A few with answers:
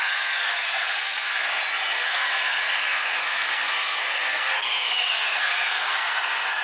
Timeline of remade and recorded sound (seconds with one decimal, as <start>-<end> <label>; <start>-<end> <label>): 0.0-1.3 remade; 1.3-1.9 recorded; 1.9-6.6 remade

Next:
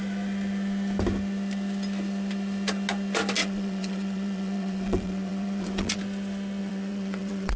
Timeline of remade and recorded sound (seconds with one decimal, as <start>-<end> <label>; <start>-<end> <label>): 0.0-3.4 recorded; 3.4-6.0 remade; 6.0-6.6 recorded; 6.6-7.6 remade

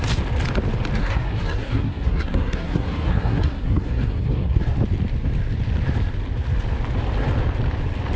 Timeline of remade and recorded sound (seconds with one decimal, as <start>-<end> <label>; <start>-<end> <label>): 0.0-1.0 recorded; 1.0-4.6 remade; 4.6-8.2 recorded

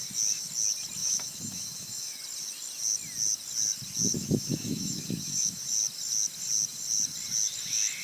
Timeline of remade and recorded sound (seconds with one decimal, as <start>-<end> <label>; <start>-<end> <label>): 0.0-1.0 recorded; 1.0-2.2 remade; 2.2-4.1 recorded; 4.1-5.6 remade; 5.6-8.0 recorded

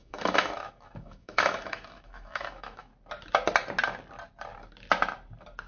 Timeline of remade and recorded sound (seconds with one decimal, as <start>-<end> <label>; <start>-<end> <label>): 0.0-2.9 remade; 2.9-5.7 recorded